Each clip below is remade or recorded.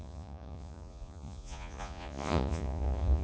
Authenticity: remade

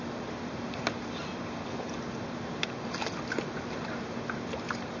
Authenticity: recorded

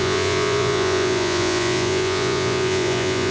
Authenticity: remade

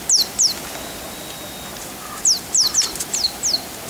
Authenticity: recorded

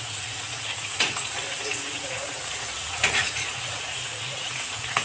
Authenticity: remade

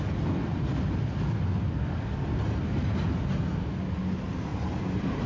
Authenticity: recorded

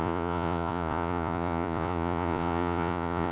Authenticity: remade